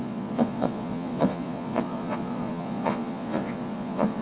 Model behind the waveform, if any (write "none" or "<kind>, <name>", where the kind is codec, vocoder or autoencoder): vocoder, Vocos